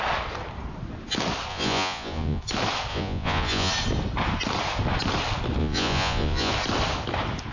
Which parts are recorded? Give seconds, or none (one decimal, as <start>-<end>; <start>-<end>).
0.0-1.5; 2.4-2.9; 3.7-5.6; 6.5-7.5